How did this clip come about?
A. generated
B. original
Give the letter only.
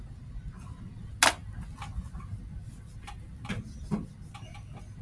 B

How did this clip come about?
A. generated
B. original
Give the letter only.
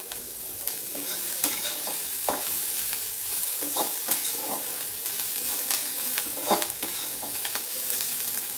A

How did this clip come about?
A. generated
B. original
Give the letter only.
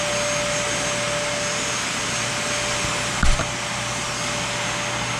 B